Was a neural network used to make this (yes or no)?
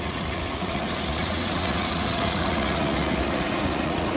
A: yes